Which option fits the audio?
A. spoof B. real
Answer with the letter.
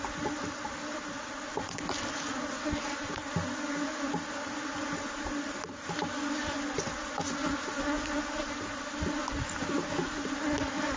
B